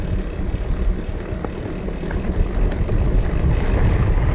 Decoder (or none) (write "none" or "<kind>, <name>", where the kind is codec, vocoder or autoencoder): none